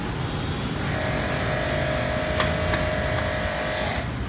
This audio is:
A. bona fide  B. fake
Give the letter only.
A